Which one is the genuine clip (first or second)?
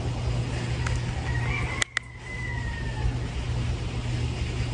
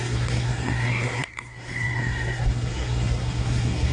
first